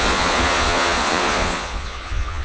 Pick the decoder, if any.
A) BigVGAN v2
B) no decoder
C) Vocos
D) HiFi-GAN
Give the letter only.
C